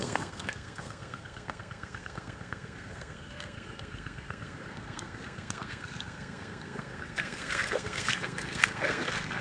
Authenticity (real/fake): fake